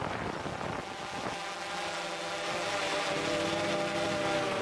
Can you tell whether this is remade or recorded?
recorded